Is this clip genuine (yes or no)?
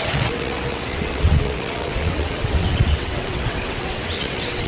no